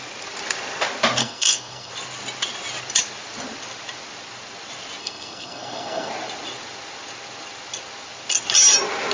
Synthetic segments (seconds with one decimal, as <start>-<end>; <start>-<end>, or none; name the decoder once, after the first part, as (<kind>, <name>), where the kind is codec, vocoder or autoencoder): 1.2-1.9 (codec, SNAC); 5.0-6.1